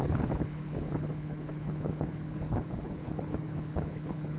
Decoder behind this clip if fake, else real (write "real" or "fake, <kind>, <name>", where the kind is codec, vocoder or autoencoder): fake, codec, HILCodec